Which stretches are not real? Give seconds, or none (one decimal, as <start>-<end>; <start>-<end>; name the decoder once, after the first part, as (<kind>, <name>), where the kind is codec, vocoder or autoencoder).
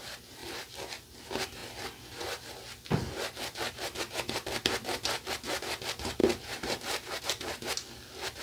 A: 6.2-7.2 (vocoder, BigVGAN v2)